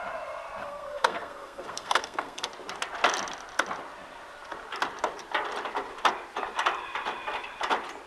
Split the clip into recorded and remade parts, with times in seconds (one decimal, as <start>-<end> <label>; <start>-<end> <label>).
0.0-0.6 recorded; 0.6-2.5 remade; 2.5-8.1 recorded